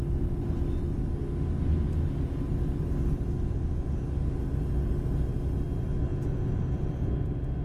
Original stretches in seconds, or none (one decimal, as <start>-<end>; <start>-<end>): 0.0-6.1; 7.1-7.6